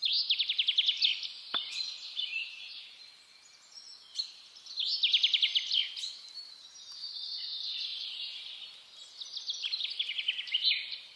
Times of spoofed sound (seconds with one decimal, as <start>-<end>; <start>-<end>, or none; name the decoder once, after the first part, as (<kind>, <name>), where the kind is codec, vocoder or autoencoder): 5.5-6.1 (vocoder, BigVGAN v2)